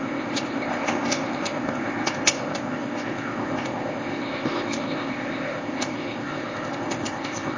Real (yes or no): no